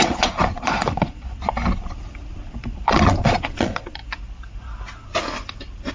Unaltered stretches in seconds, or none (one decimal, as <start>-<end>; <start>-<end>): 1.4-2.6; 4.0-5.9